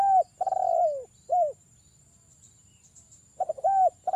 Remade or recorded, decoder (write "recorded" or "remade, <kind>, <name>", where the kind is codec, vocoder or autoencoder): recorded